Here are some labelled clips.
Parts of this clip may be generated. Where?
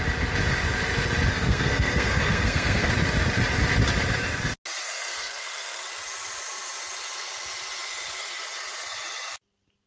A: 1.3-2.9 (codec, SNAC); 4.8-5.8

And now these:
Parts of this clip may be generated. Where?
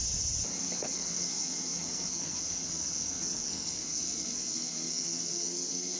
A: 0.6-6.0 (codec, SNAC)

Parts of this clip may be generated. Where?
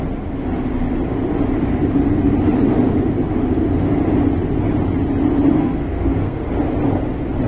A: 5.6-6.5 (codec, SNAC)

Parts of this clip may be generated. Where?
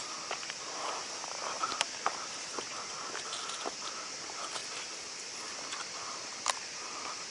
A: none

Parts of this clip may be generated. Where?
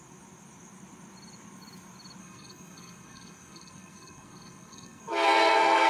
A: 2.2-5.9 (codec, SNAC)